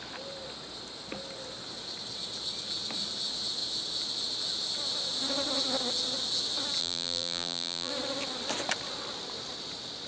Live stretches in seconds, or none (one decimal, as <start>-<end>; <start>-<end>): 0.0-6.8; 7.9-10.1